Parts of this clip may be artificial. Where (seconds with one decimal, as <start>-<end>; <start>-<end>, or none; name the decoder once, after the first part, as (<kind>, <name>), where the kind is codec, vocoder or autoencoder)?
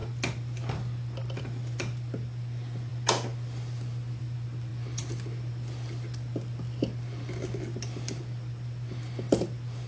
none